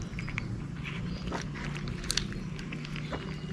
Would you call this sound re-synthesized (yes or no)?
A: no